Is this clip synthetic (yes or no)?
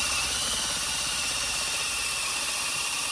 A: no